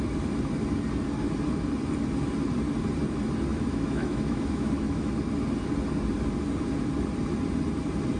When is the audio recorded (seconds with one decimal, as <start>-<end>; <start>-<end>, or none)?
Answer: 0.0-3.5; 5.1-8.2